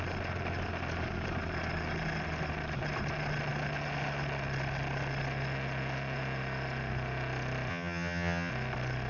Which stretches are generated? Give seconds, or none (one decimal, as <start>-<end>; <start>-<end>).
7.7-8.5